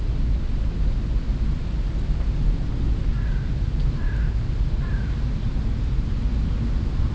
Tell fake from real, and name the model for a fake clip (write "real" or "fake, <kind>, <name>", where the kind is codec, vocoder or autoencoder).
real